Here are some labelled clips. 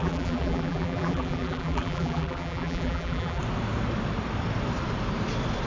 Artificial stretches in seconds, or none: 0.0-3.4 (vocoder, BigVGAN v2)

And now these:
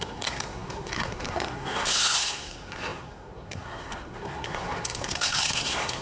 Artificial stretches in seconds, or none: 0.0-6.0 (codec, SNAC)

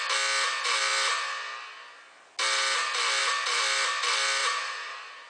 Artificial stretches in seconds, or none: 4.4-5.3 (vocoder, BigVGAN v2)

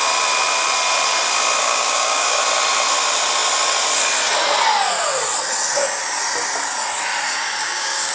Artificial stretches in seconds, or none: 1.6-2.4 (codec, DAC); 7.6-8.1

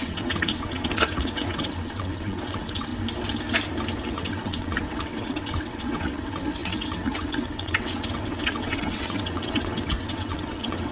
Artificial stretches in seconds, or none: 0.0-2.9 (vocoder, WaveNeXt); 4.0-10.9

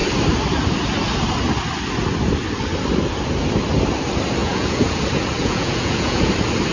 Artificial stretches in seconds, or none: 4.4-5.0 (vocoder, Vocos); 5.4-6.3